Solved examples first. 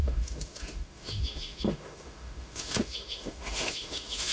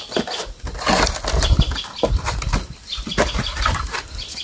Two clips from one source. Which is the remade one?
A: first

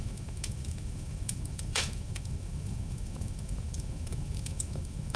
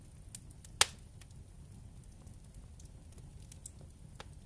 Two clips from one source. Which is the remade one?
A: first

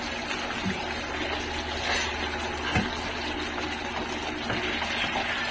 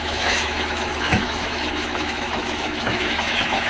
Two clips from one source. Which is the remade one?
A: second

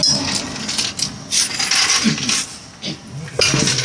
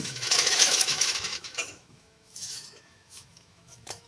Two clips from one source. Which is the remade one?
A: second